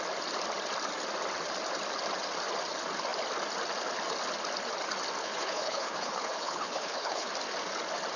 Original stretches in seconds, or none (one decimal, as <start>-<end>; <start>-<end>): 0.0-5.2; 7.3-8.2